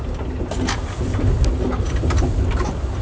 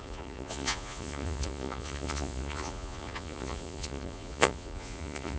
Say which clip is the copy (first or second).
second